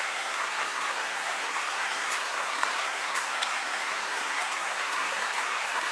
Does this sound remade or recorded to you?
remade